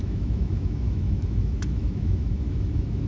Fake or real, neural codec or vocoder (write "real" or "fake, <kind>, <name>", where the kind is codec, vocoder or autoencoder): fake, autoencoder, DAC-VAE